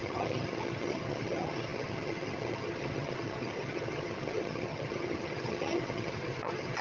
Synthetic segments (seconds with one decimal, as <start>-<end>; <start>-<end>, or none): 0.0-6.8